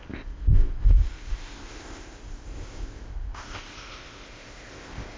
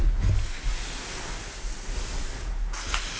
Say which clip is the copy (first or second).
first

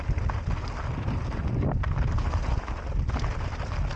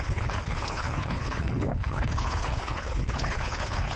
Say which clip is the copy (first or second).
second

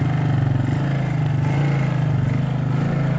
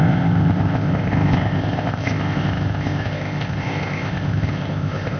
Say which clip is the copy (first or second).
second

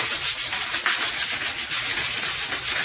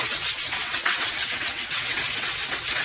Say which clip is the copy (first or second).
second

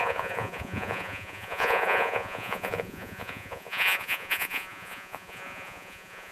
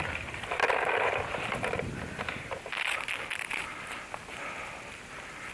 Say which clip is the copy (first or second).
first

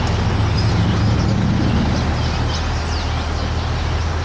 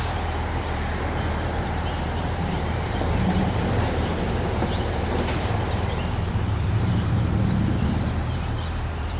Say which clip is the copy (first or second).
second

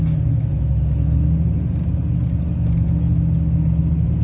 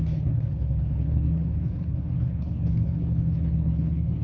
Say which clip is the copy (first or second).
second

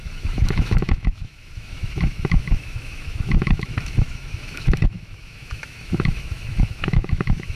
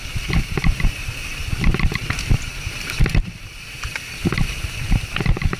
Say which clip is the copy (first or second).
first